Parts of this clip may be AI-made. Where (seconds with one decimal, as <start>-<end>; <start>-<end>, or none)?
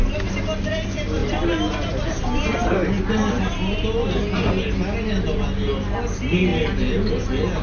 none